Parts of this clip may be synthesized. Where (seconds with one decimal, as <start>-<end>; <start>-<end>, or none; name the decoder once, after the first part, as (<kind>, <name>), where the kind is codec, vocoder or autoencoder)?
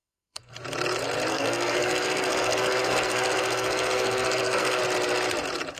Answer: 0.0-0.5 (codec, SNAC); 1.3-4.8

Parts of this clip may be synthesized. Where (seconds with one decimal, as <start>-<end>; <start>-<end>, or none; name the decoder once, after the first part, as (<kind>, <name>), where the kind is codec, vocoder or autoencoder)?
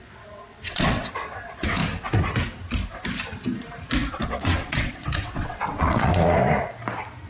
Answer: 0.0-1.8 (vocoder, WaveNeXt); 4.1-6.1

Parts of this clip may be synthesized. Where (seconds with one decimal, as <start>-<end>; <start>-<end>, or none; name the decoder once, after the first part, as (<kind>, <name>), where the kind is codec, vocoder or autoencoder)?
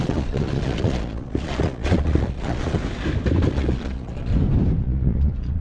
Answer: 0.0-2.8 (vocoder, Vocos); 3.5-4.3; 4.8-5.6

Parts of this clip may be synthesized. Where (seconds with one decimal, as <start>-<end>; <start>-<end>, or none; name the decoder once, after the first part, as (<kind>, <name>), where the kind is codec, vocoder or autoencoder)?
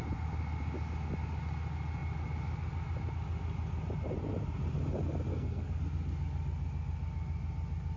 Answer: 5.3-5.8 (codec, SNAC)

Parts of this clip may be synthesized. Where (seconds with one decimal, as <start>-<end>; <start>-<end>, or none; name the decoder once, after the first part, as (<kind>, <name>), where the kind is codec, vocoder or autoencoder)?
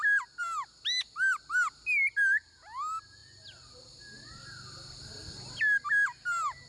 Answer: none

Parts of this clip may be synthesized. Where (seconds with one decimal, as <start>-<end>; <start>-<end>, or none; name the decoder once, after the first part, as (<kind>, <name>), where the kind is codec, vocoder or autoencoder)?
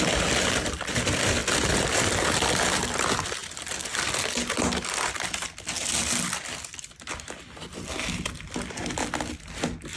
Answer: none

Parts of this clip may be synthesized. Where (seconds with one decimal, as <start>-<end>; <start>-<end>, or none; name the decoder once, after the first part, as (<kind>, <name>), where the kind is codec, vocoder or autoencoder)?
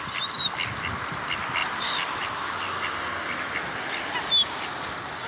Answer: none